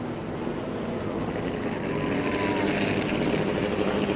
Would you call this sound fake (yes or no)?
no